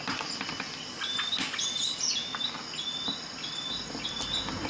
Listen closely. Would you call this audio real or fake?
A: real